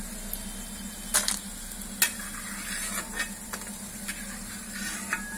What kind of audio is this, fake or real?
real